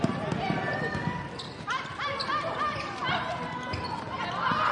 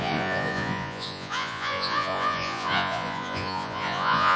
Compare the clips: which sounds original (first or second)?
first